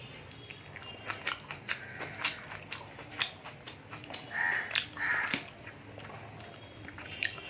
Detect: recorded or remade recorded